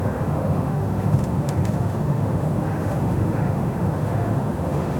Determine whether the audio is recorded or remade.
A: remade